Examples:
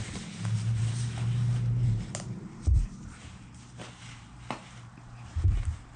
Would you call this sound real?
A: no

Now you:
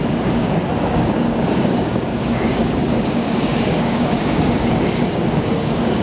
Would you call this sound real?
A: no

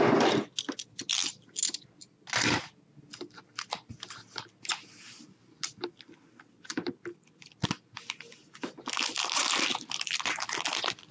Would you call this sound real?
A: yes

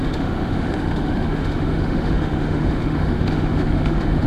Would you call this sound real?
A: no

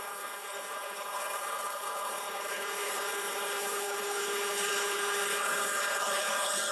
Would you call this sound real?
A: no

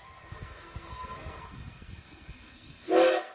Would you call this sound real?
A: no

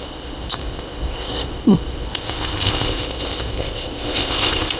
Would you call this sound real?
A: no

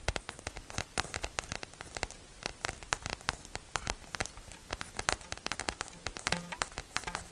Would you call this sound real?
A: yes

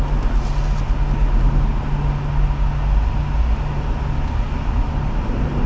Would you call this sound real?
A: yes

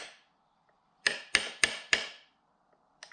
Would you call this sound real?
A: no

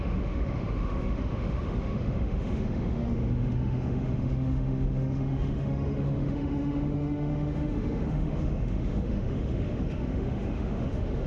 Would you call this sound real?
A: no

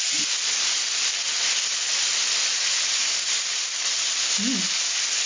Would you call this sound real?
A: yes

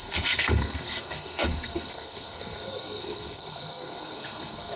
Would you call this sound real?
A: no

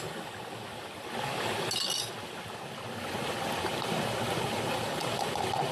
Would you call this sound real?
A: yes